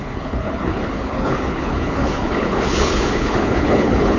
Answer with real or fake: fake